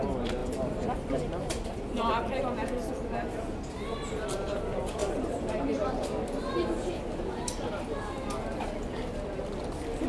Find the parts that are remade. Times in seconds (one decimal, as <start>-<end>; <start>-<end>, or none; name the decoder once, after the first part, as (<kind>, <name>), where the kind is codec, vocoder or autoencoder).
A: 0.4-2.4 (vocoder, BigVGAN v2); 5.0-7.0